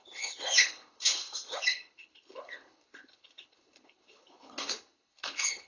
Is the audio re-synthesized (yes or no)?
yes